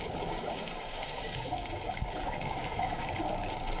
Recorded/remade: remade